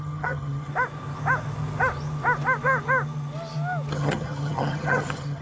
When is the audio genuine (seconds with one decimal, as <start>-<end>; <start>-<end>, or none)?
0.7-3.9